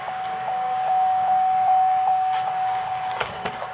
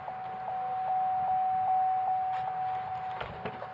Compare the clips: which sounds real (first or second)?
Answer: second